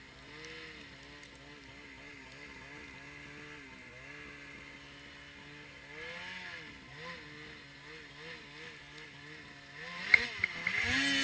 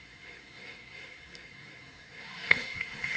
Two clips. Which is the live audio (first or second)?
first